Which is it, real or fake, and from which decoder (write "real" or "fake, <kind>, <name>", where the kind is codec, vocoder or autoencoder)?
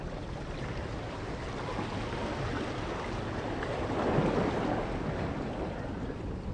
real